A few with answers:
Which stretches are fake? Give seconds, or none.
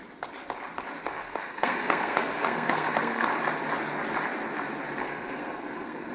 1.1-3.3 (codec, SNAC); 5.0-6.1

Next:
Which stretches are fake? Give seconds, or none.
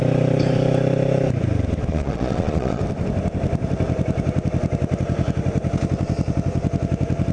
1.9-2.8 (vocoder, Vocos)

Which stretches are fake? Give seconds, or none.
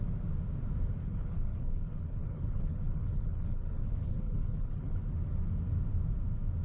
1.0-5.0 (codec, HILCodec)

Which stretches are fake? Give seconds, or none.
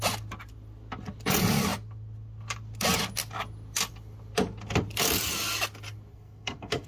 6.1-6.9 (codec, SNAC)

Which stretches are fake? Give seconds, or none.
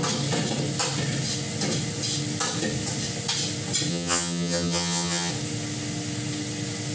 3.9-5.3 (vocoder, HiFi-GAN)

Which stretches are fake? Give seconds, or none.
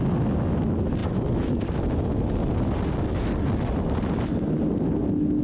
none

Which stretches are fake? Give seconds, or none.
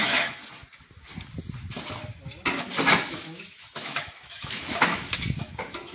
0.0-0.4 (autoencoder, DAC-VAE); 3.1-5.9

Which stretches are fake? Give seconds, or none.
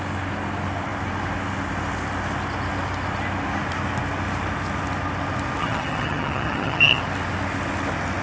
5.6-7.0 (vocoder, HiFi-GAN)